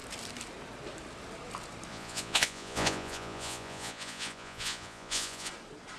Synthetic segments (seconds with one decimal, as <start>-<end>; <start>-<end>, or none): 1.9-5.5